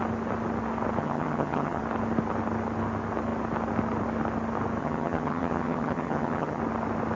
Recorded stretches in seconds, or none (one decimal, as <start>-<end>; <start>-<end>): 0.0-1.0; 1.8-4.8; 6.6-7.1